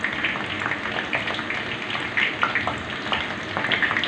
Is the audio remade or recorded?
recorded